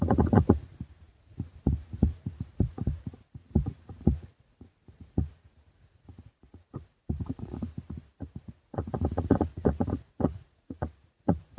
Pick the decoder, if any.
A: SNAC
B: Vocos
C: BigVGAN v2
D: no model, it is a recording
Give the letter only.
B